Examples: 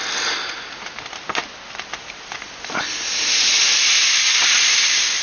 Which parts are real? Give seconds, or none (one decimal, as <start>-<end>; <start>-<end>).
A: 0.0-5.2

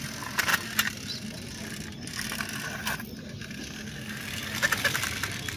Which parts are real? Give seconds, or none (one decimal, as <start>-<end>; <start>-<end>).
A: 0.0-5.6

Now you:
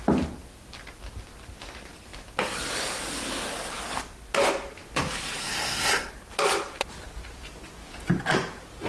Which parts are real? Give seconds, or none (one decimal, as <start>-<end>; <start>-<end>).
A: 0.0-5.4; 6.1-8.9